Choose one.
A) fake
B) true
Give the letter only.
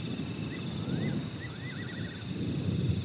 B